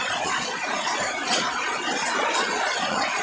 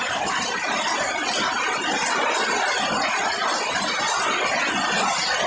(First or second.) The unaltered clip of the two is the second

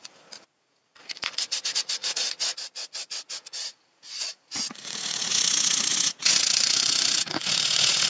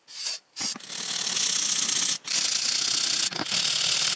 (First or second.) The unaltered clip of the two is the second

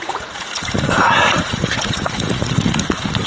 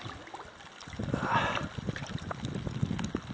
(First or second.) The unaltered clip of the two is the second